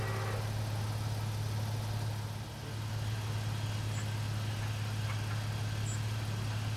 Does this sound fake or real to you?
real